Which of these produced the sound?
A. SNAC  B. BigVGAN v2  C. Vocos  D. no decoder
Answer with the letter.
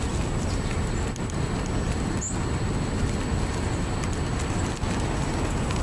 D